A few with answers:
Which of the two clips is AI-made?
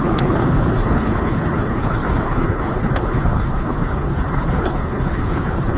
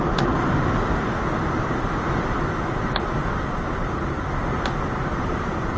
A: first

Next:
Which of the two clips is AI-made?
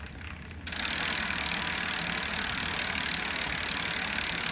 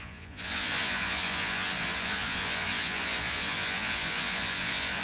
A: second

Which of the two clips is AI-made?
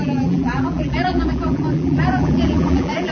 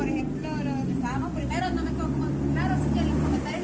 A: first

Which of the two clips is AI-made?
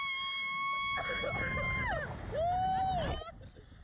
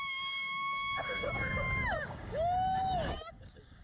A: second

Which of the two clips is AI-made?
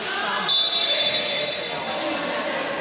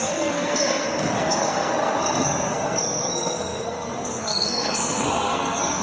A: second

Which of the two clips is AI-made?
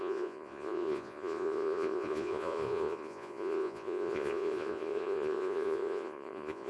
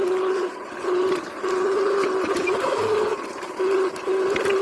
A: first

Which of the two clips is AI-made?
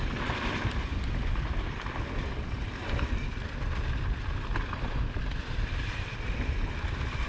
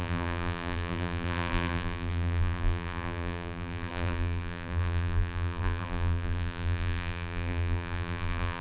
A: second